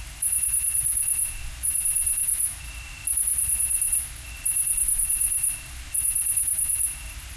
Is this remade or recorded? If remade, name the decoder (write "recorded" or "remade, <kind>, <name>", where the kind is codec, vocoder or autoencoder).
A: recorded